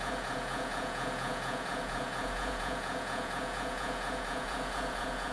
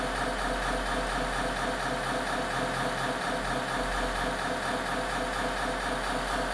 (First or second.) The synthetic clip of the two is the first